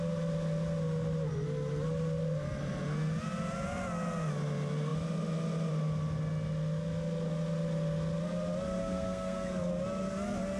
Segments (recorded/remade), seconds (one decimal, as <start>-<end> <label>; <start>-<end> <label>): 0.0-8.8 recorded; 8.8-9.7 remade; 9.7-10.6 recorded